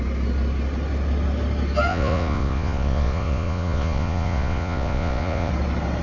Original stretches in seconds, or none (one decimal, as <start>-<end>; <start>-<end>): 0.0-1.9; 5.5-6.0